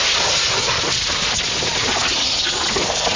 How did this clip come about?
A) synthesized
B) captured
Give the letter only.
B